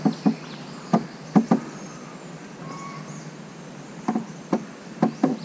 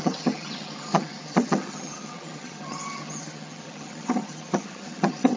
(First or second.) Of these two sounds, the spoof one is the second